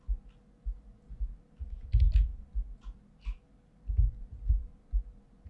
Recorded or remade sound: recorded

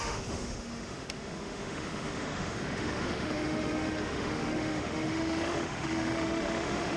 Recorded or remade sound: remade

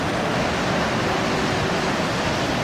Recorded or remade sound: recorded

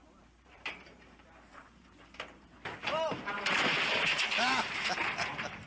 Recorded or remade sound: remade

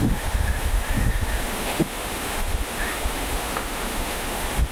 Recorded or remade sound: remade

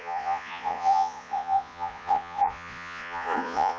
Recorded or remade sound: remade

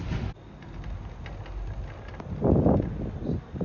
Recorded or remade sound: recorded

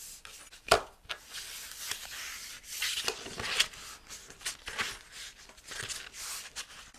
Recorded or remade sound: recorded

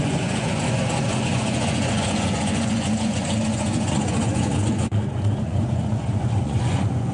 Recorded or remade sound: remade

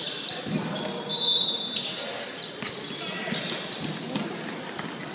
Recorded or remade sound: recorded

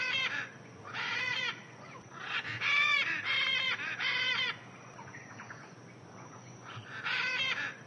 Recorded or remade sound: remade